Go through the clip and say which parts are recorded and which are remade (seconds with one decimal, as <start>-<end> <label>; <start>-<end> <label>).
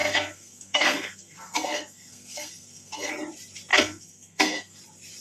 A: 0.0-3.1 remade; 3.1-3.7 recorded; 3.7-4.8 remade; 4.8-5.2 recorded